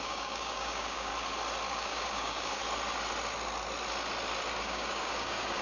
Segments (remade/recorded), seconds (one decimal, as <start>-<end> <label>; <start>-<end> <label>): 0.0-1.1 remade; 1.1-1.7 recorded; 1.7-2.6 remade; 2.6-4.6 recorded; 4.6-5.6 remade